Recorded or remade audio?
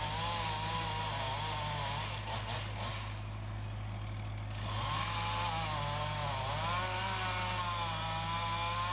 recorded